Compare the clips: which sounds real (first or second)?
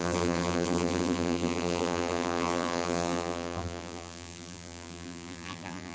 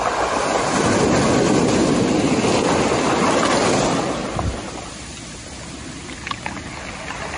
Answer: second